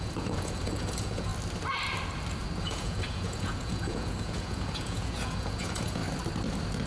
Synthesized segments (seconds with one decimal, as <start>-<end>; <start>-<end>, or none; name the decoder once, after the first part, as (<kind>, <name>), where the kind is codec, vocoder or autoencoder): 0.0-1.3 (vocoder, Vocos); 2.6-6.0

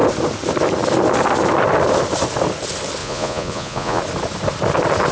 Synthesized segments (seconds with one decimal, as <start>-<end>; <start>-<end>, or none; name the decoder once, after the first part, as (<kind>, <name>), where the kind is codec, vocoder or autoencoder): 3.0-4.0 (vocoder, Vocos)

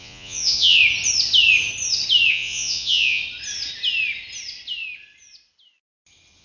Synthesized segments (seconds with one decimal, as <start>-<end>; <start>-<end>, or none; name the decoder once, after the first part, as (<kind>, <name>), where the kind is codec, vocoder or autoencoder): 0.0-0.8 (vocoder, Vocos); 2.3-3.2

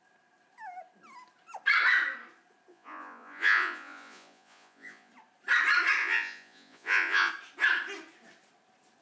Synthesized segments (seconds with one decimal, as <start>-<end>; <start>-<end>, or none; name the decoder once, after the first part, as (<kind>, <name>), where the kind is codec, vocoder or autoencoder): 2.7-5.1 (vocoder, Vocos); 6.0-7.3

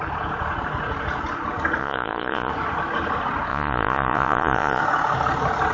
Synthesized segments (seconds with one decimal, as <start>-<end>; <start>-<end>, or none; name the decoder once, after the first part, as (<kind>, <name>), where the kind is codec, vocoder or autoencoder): 1.8-2.5 (vocoder, Vocos); 3.5-4.8

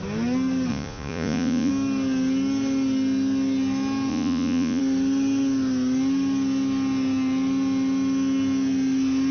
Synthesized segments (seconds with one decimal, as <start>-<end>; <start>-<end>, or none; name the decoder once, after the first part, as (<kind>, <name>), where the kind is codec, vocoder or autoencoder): 0.7-1.7 (vocoder, Vocos); 4.1-4.8

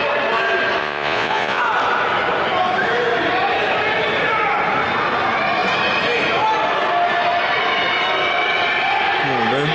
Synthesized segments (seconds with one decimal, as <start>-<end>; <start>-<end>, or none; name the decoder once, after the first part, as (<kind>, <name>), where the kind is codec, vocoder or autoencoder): 0.8-1.6 (vocoder, Vocos)